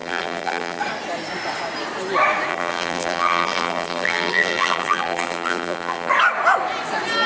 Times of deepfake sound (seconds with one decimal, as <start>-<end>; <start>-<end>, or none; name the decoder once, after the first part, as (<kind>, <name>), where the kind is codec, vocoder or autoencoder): 0.0-0.8 (vocoder, BigVGAN v2); 2.5-6.1